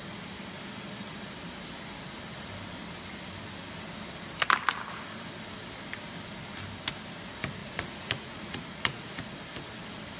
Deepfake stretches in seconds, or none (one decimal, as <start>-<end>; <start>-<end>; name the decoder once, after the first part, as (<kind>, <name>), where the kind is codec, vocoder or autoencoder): 7.6-9.2 (vocoder, Vocos)